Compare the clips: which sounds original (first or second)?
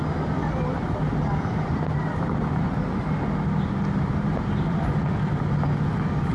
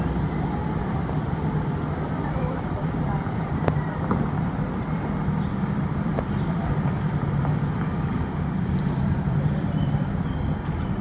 first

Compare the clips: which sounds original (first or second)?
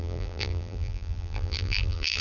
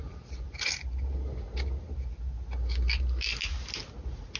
second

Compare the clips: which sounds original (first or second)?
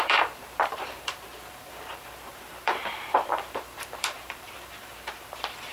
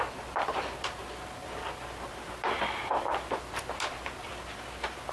second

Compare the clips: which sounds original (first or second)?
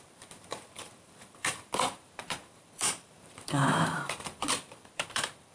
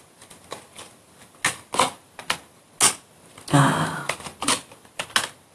second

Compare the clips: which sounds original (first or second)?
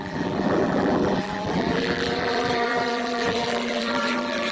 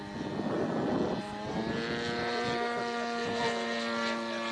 second